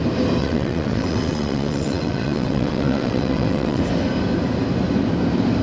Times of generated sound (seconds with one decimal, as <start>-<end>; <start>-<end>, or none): 0.4-3.8